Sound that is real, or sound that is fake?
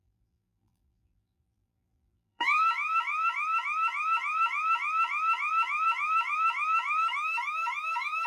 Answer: fake